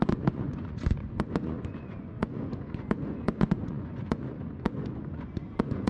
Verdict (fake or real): fake